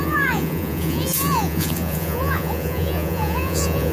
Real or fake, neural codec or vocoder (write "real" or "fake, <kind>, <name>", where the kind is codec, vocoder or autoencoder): fake, vocoder, Vocos